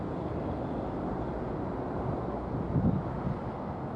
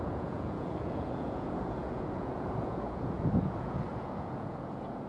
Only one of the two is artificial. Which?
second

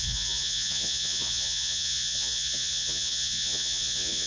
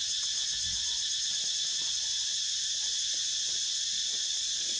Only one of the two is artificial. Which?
first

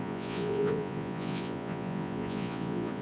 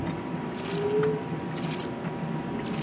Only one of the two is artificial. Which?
first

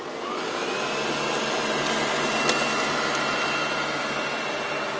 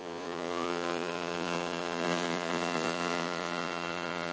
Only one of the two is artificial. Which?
second